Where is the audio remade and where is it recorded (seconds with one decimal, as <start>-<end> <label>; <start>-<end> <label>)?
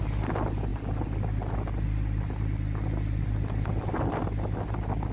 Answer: 0.0-5.1 recorded